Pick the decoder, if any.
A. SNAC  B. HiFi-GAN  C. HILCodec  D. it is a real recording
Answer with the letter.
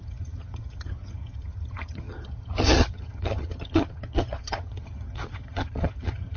B